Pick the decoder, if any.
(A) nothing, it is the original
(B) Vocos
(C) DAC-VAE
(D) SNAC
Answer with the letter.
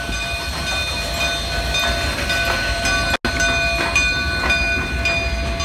A